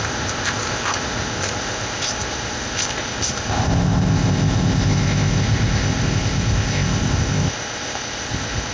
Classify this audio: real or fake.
fake